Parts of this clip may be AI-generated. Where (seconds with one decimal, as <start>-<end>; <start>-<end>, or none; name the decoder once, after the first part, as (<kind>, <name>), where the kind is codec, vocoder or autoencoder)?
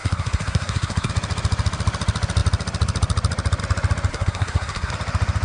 0.0-1.1 (codec, SNAC); 4.1-4.9